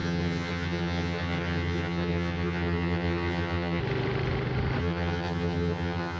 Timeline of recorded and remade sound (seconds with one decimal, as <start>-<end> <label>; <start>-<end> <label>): 0.0-3.8 remade; 3.8-4.8 recorded; 4.8-6.2 remade